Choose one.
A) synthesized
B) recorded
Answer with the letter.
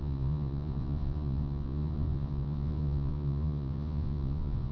A